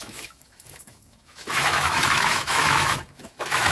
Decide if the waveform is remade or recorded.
remade